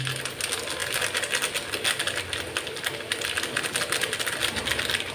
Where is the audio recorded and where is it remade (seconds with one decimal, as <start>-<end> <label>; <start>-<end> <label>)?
0.0-5.1 recorded